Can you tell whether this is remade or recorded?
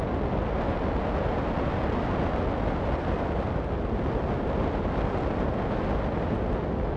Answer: recorded